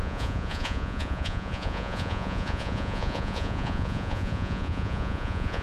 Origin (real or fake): fake